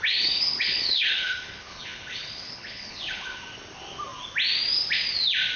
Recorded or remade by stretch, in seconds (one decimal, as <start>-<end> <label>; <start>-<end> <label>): 0.0-3.4 remade; 3.4-5.6 recorded